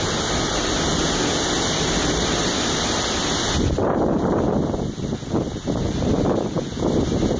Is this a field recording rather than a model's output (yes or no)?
yes